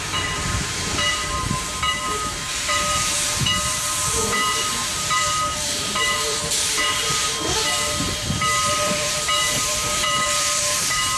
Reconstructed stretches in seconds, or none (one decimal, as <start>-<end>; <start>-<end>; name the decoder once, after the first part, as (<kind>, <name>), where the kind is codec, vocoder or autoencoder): 0.0-11.2 (vocoder, BigVGAN v2)